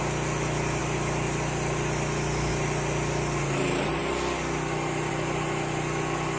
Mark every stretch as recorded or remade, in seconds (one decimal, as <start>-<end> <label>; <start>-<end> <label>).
0.0-6.4 recorded